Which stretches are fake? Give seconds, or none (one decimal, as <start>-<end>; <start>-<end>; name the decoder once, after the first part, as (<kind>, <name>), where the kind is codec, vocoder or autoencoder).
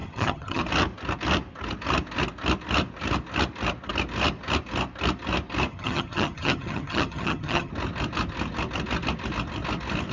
0.0-0.6 (vocoder, HiFi-GAN); 5.7-7.7